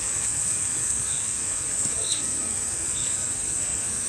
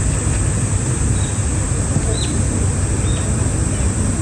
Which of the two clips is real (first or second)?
second